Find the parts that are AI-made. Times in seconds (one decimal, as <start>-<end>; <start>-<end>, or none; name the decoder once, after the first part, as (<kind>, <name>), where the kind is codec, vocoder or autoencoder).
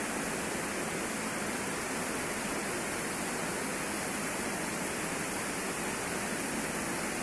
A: none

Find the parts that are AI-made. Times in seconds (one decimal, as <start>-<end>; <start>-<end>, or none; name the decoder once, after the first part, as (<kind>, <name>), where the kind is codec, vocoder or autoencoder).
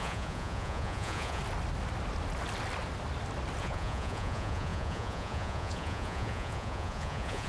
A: 0.0-1.4 (vocoder, Vocos); 3.6-7.5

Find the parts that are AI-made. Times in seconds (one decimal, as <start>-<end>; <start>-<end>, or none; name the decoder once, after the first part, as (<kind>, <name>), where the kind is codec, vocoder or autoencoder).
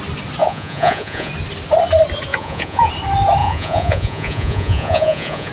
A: 0.4-1.3 (vocoder, Vocos); 2.3-2.9; 3.4-5.5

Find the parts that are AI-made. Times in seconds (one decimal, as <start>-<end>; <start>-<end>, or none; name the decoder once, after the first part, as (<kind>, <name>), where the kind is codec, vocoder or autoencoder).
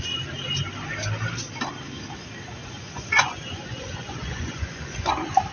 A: 2.6-5.1 (vocoder, Vocos)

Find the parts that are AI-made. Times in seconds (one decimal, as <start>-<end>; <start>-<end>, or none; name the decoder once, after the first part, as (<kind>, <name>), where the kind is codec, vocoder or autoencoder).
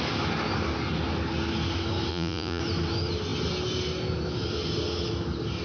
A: 2.1-2.6 (vocoder, Vocos)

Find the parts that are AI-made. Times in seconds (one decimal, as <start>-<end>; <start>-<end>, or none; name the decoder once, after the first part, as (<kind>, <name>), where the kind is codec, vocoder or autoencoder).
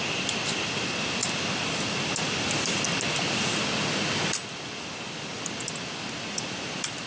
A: none